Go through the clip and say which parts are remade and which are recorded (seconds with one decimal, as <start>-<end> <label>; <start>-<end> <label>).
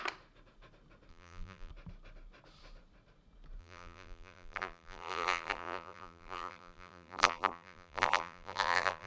0.0-1.1 recorded; 1.1-1.7 remade; 1.7-3.6 recorded; 3.6-9.1 remade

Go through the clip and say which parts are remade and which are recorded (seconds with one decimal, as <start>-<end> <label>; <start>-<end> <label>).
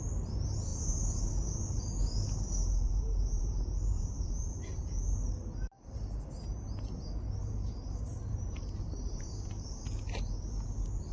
0.0-2.7 recorded; 2.7-4.8 remade; 4.8-7.4 recorded; 7.4-9.9 remade; 9.9-11.1 recorded